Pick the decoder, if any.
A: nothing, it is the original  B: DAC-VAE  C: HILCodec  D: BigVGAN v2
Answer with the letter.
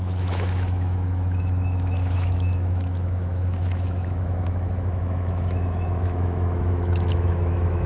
B